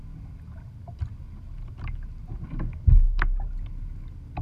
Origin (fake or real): real